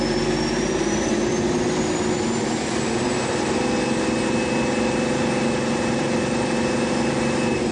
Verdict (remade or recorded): recorded